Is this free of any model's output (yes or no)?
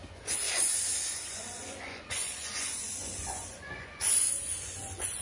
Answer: no